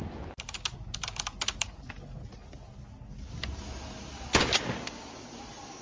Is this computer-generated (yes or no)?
no